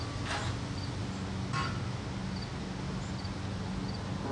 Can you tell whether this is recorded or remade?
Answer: recorded